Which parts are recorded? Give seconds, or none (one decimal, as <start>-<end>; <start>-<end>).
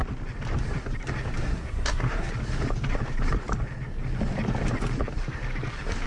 0.0-1.4; 2.3-6.1